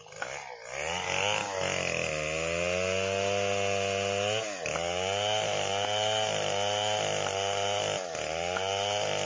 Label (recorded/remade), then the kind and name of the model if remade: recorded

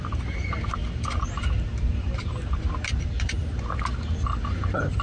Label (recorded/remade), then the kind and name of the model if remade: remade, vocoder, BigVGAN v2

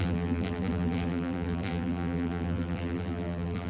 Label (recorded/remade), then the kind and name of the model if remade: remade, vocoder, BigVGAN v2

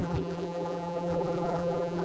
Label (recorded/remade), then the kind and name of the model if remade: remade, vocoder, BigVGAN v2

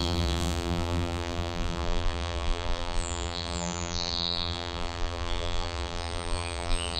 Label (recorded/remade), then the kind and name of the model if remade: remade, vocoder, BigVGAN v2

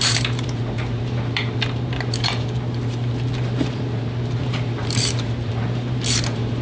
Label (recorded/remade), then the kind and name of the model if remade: remade, vocoder, BigVGAN v2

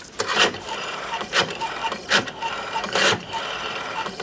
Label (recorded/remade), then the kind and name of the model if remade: remade, vocoder, BigVGAN v2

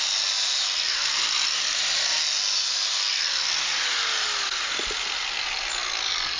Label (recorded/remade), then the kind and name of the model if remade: recorded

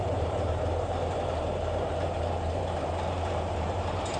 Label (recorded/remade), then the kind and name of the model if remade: remade, vocoder, BigVGAN v2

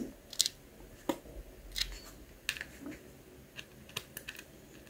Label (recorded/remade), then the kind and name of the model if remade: recorded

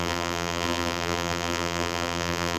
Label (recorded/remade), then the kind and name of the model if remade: remade, vocoder, BigVGAN v2